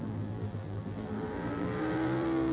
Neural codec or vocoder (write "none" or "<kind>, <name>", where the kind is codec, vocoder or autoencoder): vocoder, BigVGAN v2